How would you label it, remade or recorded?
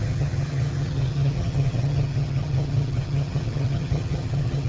remade